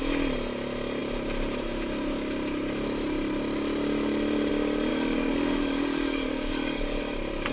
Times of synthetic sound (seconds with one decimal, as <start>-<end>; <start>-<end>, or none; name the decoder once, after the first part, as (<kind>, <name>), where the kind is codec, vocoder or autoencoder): 4.9-7.0 (codec, DAC)